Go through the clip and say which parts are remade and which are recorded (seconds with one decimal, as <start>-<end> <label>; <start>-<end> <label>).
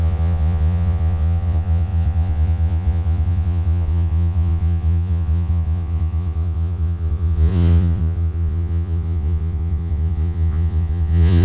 0.0-11.4 remade